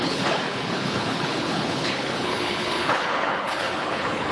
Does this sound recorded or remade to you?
remade